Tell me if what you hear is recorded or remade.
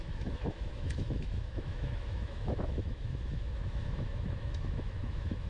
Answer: remade